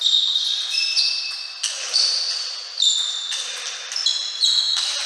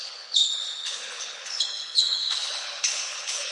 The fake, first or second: second